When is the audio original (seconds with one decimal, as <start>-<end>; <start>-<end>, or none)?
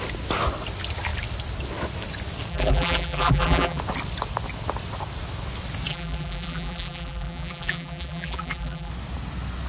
0.0-2.5; 3.8-5.9; 8.9-9.7